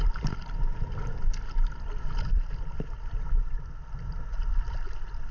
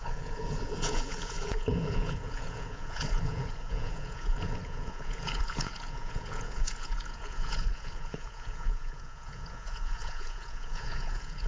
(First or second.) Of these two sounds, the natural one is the first